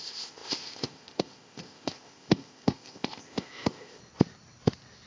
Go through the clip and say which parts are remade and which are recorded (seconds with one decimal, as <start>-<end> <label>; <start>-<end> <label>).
0.0-4.0 remade; 4.0-5.1 recorded